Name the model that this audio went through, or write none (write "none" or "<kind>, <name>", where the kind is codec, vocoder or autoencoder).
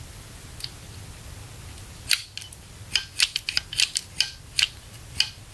none